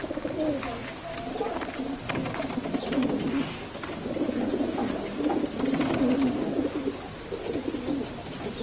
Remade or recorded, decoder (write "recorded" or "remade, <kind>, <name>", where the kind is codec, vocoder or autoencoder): recorded